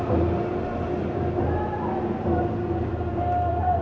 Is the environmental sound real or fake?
real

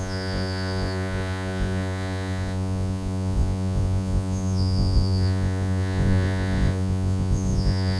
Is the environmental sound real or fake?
fake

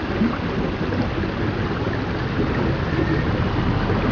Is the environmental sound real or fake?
real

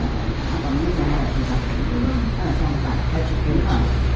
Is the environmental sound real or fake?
real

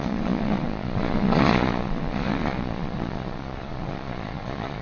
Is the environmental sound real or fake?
fake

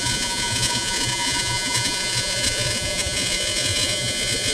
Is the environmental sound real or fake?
fake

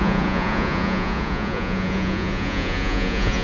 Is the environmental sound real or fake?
fake